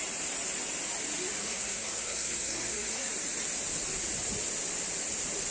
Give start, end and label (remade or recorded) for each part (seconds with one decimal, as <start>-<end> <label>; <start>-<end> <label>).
0.0-1.4 recorded; 1.4-3.1 remade; 3.1-5.5 recorded